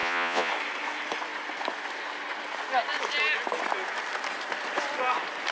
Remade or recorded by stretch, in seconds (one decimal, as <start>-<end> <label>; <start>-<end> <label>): 0.0-0.5 remade; 0.5-5.5 recorded

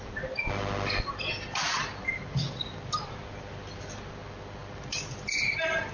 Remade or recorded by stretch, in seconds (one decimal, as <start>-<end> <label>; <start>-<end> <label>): 0.0-5.9 recorded

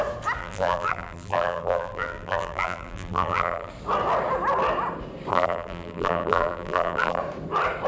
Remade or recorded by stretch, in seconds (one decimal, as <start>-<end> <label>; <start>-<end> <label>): 0.0-0.4 recorded; 0.4-3.7 remade; 3.7-5.3 recorded; 5.3-7.2 remade; 7.2-7.9 recorded

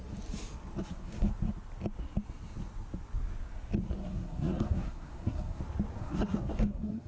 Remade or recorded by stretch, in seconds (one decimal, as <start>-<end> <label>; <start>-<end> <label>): 0.0-0.8 recorded; 0.8-1.3 remade; 1.3-4.0 recorded; 4.0-5.6 remade; 5.6-6.0 recorded; 6.0-7.1 remade

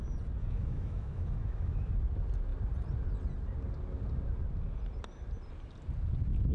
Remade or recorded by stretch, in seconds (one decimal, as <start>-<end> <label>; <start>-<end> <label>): 0.0-0.4 recorded; 0.4-1.9 remade; 1.9-6.5 recorded

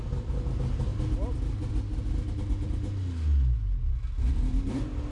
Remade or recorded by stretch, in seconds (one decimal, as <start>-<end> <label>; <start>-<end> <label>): 0.0-5.1 recorded

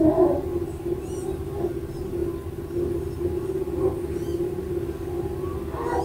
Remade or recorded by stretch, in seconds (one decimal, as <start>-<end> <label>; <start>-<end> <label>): 0.0-6.0 recorded